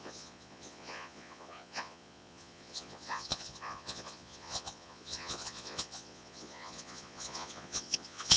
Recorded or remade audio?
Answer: remade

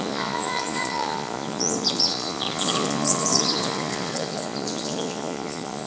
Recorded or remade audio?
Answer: remade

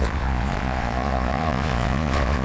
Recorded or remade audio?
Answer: remade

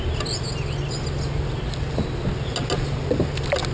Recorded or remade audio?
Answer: recorded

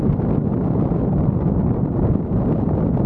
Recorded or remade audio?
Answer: recorded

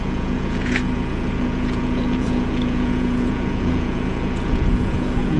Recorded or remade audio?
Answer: remade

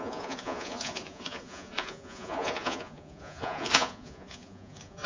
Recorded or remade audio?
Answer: remade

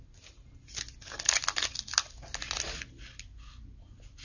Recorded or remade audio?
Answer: recorded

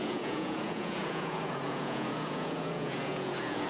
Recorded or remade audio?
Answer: remade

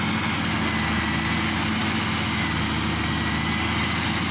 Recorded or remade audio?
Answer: recorded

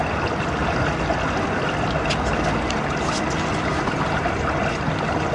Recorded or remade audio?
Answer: recorded